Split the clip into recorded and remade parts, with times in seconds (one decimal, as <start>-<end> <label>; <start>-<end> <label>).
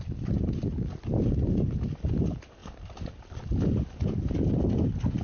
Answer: 0.0-5.2 recorded